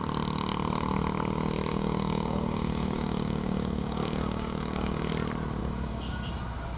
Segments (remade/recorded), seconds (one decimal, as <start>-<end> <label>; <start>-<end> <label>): 0.0-1.7 recorded; 1.7-5.1 remade; 5.1-5.6 recorded; 5.6-6.3 remade; 6.3-6.8 recorded